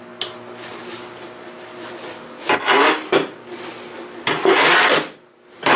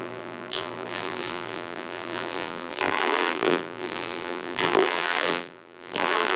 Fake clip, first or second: second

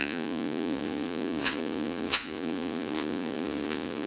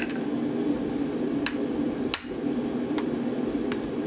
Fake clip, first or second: first